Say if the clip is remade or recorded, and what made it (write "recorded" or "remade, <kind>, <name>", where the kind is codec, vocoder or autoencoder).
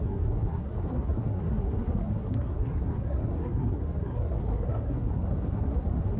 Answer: remade, codec, SNAC